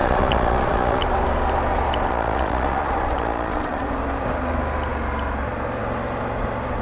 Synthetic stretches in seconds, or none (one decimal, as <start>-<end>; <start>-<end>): 0.0-1.0; 2.1-3.8